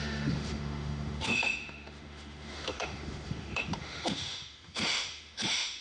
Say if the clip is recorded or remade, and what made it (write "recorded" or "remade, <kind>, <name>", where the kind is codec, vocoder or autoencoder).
remade, autoencoder, DAC-VAE